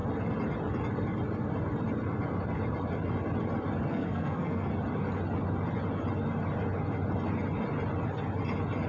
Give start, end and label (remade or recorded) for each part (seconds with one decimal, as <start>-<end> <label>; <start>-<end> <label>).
0.0-3.9 recorded; 3.9-4.7 remade; 4.7-8.9 recorded